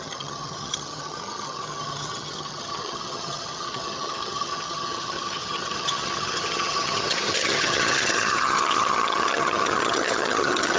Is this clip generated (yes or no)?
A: yes